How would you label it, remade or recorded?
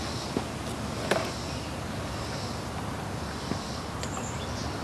recorded